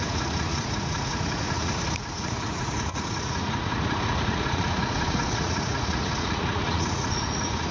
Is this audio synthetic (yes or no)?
yes